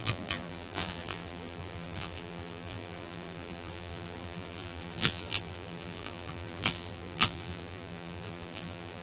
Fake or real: fake